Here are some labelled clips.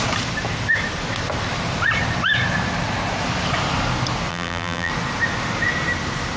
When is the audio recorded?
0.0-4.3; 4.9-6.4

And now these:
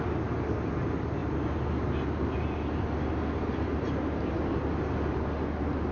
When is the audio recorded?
0.0-5.9

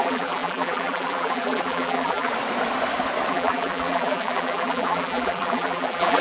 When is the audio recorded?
2.3-3.3

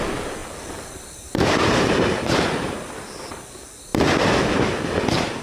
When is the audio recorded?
0.0-0.4; 3.4-5.4

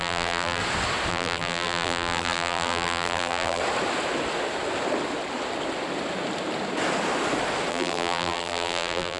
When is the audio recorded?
0.6-1.1; 3.6-7.7